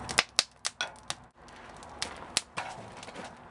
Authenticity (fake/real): real